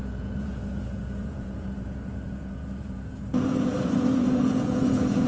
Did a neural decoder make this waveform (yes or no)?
yes